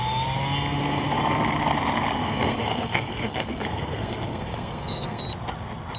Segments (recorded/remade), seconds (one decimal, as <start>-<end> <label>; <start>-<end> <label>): 0.0-2.2 recorded; 2.2-5.2 remade; 5.2-6.0 recorded